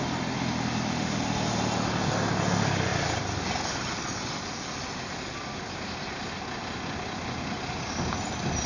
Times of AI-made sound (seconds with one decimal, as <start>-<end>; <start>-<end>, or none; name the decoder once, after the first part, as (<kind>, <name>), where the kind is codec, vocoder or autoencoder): none